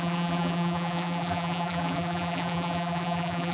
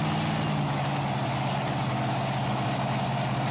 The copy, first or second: first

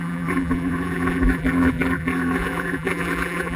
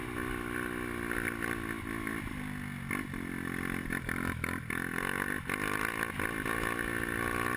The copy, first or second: first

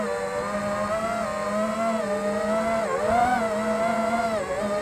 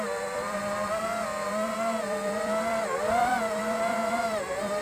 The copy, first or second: second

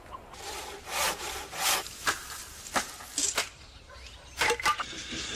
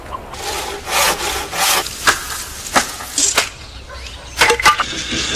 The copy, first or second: first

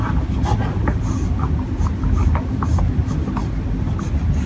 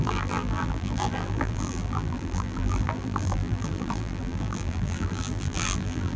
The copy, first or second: second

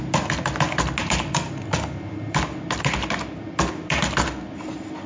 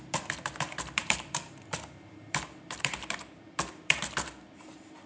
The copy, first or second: second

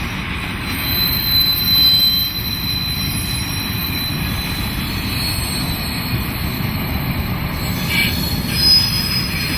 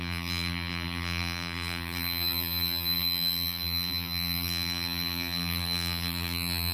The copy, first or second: second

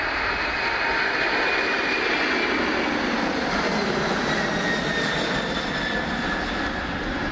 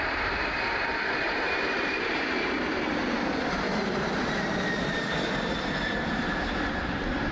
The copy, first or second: second